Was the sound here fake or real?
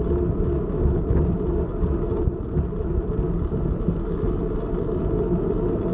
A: real